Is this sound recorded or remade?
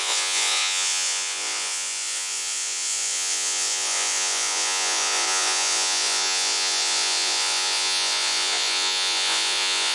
remade